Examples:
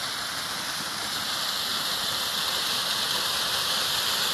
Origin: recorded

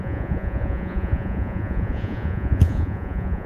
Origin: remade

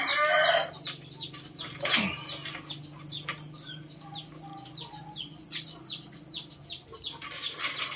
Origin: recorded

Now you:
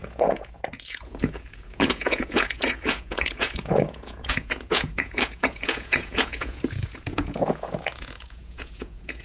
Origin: remade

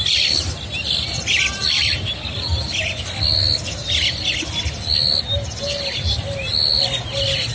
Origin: recorded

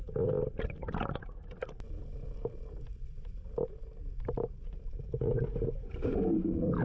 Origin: recorded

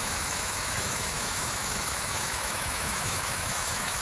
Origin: remade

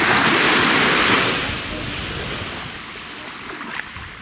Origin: recorded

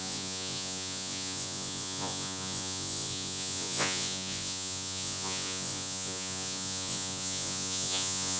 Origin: remade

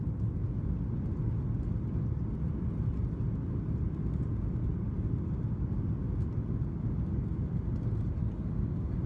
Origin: recorded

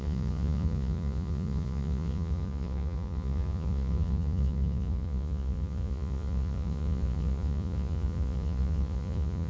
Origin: remade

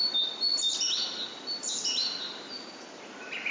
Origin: recorded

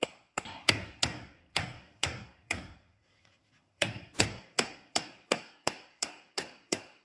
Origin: remade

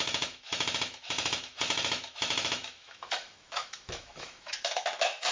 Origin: remade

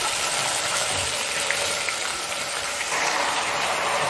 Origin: remade